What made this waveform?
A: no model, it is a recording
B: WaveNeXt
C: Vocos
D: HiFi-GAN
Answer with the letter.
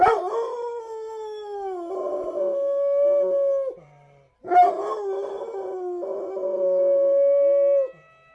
A